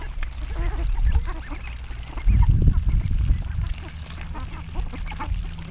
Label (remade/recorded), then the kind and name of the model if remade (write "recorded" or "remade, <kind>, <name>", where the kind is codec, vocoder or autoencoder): recorded